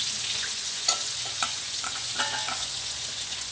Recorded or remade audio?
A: remade